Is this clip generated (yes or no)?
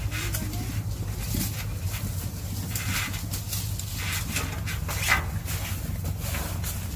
no